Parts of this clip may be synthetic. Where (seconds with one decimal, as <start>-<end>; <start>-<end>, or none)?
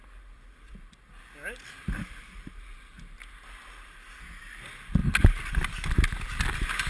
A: none